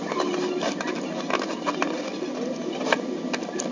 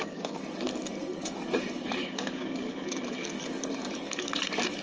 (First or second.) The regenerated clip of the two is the second